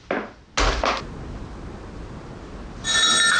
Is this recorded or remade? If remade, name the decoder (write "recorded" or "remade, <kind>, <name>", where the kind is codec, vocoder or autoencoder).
recorded